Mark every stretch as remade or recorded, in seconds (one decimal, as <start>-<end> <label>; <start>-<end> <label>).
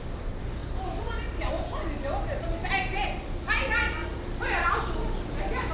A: 0.0-5.7 recorded